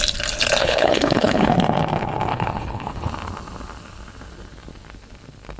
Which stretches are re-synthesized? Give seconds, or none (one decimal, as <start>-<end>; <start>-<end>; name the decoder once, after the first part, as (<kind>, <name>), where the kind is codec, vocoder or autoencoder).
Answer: 0.6-1.5 (codec, HILCodec); 2.3-3.1